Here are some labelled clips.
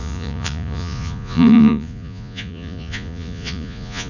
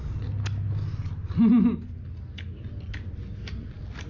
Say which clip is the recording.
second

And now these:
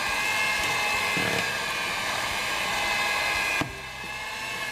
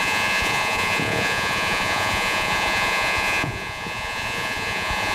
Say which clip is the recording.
first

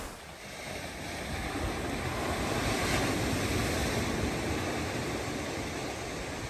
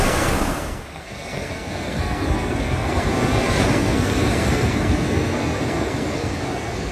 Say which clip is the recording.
first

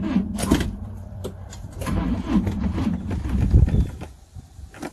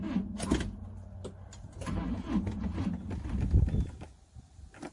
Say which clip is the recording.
second